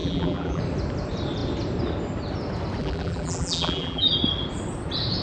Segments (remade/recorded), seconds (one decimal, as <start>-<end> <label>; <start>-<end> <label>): 0.0-0.6 remade; 0.6-2.8 recorded; 2.8-4.1 remade; 4.1-5.2 recorded